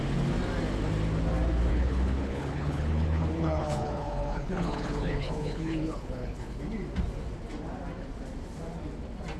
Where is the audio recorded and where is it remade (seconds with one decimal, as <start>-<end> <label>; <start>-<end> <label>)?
0.0-1.7 recorded; 1.7-6.6 remade; 6.6-9.4 recorded